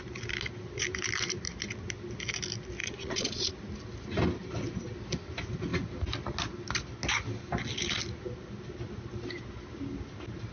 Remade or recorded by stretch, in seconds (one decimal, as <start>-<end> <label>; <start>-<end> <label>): 0.0-2.8 recorded; 2.8-3.5 remade; 3.5-10.5 recorded